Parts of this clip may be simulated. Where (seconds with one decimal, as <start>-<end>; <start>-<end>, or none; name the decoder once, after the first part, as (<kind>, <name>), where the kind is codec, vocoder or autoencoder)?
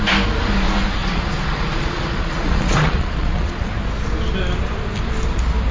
1.0-3.7 (vocoder, Vocos)